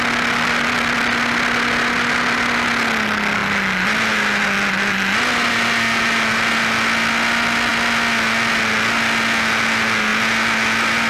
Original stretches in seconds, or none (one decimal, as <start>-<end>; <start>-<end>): 0.0-11.1